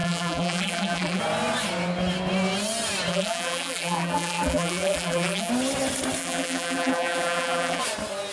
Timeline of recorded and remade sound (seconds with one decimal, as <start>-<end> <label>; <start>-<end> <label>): 0.0-1.2 remade; 1.2-3.1 recorded; 3.1-5.5 remade; 5.5-6.2 recorded; 6.2-7.8 remade; 7.8-8.3 recorded